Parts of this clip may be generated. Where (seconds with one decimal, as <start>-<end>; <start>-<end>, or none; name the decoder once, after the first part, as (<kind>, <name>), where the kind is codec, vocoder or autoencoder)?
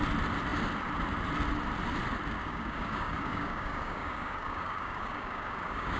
2.4-6.0 (codec, DAC)